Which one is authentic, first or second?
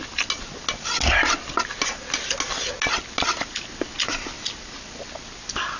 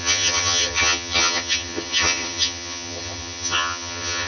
first